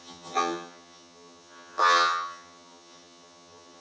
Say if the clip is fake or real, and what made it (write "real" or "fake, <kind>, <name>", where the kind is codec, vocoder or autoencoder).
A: fake, vocoder, HiFi-GAN